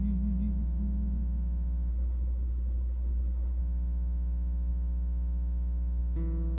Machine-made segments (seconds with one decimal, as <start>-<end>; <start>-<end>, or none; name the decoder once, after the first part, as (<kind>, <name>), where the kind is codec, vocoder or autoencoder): 1.9-3.6 (codec, SNAC)